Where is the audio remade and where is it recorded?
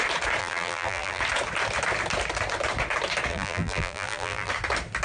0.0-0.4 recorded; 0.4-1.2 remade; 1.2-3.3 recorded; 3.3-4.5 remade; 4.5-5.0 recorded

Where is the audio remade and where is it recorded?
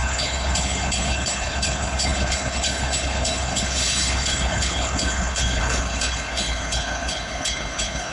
0.0-8.1 remade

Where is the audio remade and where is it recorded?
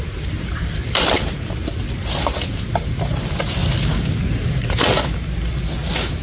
0.0-3.6 remade; 3.6-4.8 recorded; 4.8-6.2 remade